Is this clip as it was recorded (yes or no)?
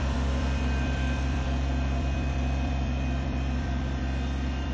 no